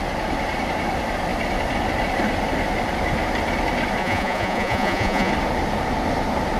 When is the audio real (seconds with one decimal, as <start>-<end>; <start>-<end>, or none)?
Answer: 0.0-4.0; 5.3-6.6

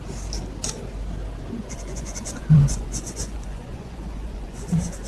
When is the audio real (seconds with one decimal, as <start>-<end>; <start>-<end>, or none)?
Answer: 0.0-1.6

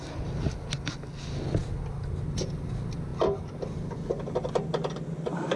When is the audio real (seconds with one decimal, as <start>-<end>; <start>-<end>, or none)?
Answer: 0.0-5.6

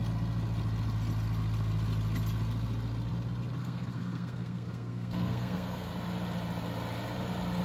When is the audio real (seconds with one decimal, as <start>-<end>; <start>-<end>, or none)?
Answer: 0.0-3.6; 5.9-7.6